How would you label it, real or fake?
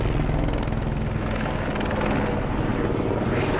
real